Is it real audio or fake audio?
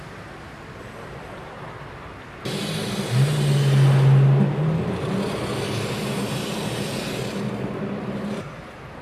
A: real